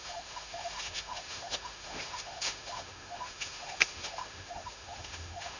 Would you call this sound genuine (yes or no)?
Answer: no